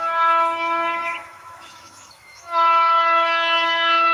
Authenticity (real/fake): fake